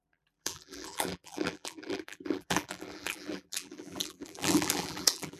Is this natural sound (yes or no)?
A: no